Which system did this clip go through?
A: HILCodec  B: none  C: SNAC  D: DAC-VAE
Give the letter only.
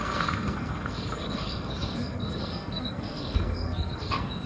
C